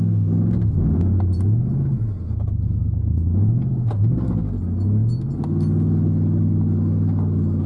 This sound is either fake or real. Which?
real